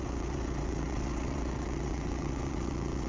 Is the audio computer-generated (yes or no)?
yes